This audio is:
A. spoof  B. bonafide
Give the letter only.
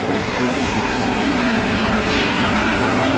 A